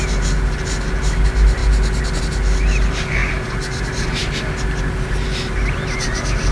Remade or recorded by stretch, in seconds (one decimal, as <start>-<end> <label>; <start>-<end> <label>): 0.0-6.5 recorded